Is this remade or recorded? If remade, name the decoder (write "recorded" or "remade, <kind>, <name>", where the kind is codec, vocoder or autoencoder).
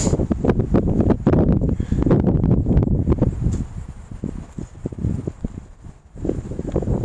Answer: remade, vocoder, BigVGAN v2